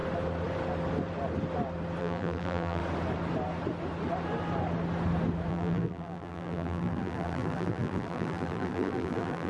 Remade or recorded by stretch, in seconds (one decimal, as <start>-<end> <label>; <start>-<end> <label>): 0.0-2.0 recorded; 2.0-2.8 remade; 2.8-5.5 recorded; 5.5-9.5 remade